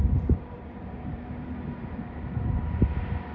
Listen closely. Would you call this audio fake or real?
fake